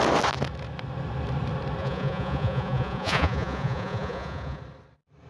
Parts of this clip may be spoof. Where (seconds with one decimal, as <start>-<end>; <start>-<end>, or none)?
1.8-4.6